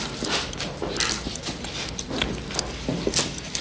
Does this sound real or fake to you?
real